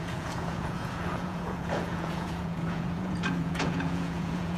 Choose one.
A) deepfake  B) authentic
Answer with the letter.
A